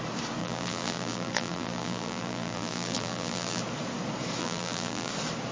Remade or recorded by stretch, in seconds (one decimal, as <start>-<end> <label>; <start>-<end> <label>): 0.0-0.4 recorded; 0.4-3.6 remade; 3.6-4.4 recorded; 4.4-5.1 remade; 5.1-5.5 recorded